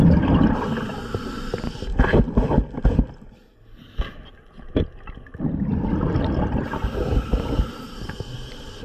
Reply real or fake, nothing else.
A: real